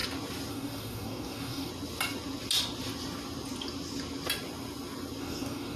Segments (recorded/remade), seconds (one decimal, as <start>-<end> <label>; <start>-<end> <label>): 0.0-0.5 recorded; 0.5-1.7 remade; 1.7-5.2 recorded; 5.2-5.8 remade